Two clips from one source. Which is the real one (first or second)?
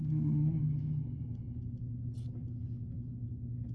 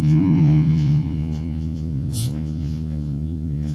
first